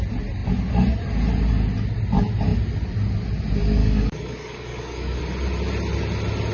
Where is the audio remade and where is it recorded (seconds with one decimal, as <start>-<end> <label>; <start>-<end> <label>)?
0.0-3.8 recorded; 3.8-5.2 remade; 5.2-6.5 recorded